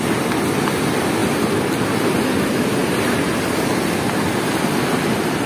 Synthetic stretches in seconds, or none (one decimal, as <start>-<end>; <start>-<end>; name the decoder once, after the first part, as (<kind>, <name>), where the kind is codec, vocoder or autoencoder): none